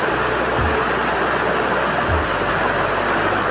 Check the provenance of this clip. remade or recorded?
recorded